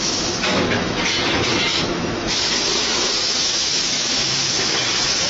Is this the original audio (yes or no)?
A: no